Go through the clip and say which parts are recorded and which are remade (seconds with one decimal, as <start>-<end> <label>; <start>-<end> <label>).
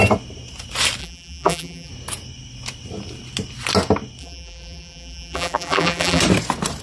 0.0-1.0 recorded; 1.0-1.9 remade; 1.9-4.2 recorded; 4.2-6.2 remade; 6.2-6.8 recorded